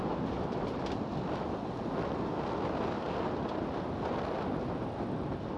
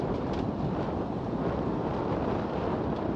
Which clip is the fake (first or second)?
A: second